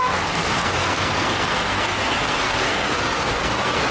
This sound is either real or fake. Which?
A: fake